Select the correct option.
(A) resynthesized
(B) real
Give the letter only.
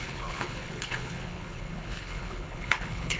A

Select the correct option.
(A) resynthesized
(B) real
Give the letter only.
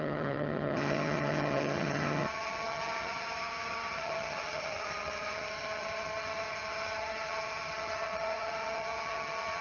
A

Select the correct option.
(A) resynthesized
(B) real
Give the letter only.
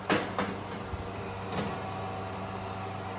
B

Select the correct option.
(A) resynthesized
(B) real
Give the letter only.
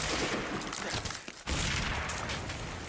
B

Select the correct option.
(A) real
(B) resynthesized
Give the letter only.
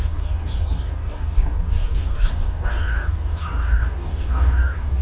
B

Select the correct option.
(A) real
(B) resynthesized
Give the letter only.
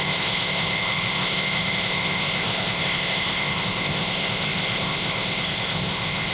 B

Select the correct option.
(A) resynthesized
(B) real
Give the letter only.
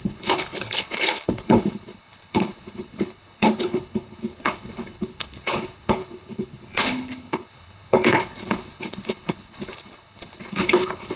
A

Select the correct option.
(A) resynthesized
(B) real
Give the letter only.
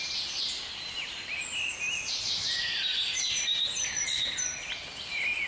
B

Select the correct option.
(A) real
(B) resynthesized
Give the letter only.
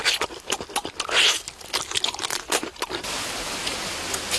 A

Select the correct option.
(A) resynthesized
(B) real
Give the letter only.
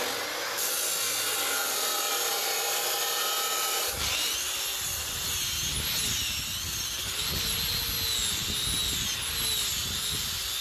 B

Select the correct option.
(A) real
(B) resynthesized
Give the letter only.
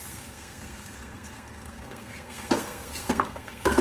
B